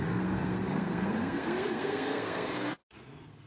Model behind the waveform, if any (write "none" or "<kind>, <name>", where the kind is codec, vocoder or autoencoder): codec, SNAC